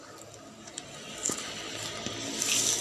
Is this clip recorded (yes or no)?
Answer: yes